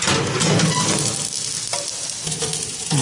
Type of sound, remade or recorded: recorded